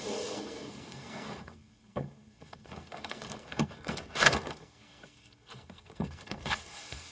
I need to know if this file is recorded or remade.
remade